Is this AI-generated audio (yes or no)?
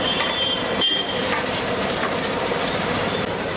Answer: yes